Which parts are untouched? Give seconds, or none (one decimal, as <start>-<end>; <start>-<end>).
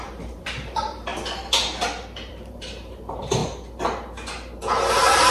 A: 1.1-2.3; 3.4-5.3